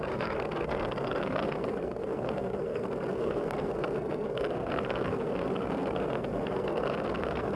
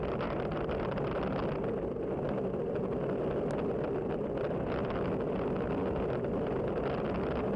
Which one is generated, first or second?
first